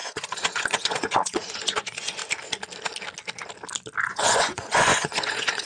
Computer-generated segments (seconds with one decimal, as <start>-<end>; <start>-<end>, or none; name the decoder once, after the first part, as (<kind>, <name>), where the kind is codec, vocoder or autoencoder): 0.0-2.2 (vocoder, Vocos); 4.1-5.7